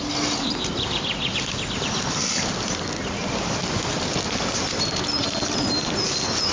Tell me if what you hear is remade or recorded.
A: recorded